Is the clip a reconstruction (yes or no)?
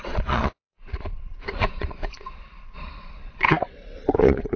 yes